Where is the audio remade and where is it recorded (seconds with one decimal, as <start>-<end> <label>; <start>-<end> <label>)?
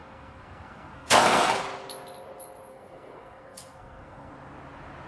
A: 0.0-1.6 remade; 1.6-2.7 recorded; 2.7-4.3 remade; 4.3-5.1 recorded